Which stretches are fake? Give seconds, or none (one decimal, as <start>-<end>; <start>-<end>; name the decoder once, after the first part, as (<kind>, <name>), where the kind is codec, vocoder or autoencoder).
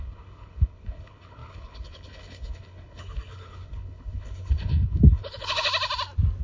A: 0.0-5.7 (codec, HILCodec)